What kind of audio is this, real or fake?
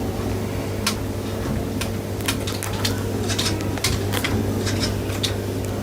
real